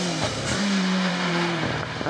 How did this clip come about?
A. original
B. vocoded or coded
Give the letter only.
B